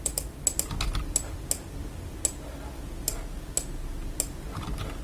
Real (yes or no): yes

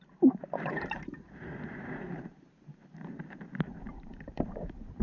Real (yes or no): no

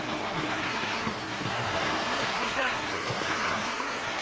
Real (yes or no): no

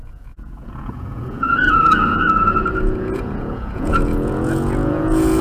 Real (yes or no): no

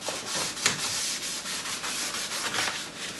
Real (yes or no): yes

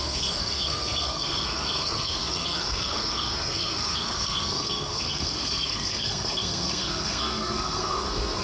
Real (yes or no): no